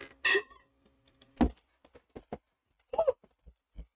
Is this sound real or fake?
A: real